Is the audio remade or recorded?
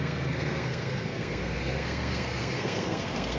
remade